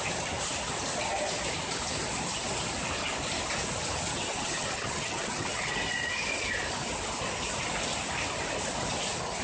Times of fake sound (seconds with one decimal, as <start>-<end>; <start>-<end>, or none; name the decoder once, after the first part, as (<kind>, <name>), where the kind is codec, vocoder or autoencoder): 4.1-5.7 (vocoder, HiFi-GAN)